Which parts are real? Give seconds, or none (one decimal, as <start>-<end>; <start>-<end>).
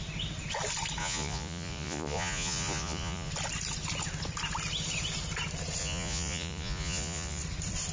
0.0-1.0; 3.3-5.8; 7.4-7.9